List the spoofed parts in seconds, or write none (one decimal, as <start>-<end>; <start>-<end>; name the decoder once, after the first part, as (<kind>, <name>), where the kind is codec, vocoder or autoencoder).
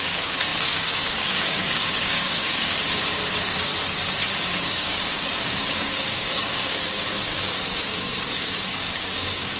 0.0-3.7 (codec, DAC); 4.4-9.6